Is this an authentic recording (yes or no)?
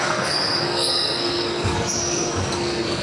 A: no